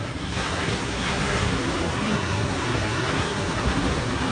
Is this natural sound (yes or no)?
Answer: no